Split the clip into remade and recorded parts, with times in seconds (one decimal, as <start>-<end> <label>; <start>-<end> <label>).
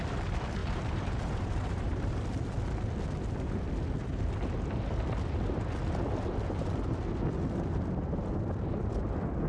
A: 0.0-0.6 recorded; 0.6-2.2 remade; 2.2-9.5 recorded